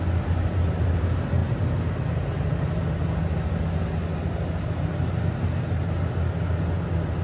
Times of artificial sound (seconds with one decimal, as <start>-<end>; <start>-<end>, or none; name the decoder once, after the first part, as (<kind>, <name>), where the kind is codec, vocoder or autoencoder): none